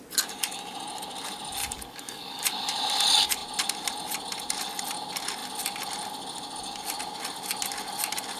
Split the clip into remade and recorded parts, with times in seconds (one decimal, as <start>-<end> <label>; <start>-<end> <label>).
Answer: 0.0-1.6 recorded; 1.6-2.4 remade; 2.4-8.4 recorded